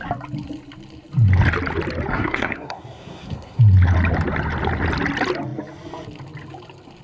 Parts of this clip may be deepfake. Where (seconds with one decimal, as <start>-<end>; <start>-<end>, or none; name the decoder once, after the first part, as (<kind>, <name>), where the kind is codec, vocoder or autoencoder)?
2.1-3.6 (codec, SNAC)